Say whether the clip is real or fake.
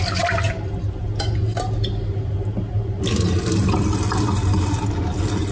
real